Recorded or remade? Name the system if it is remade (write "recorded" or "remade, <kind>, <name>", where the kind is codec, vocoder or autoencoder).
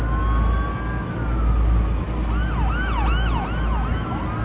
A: recorded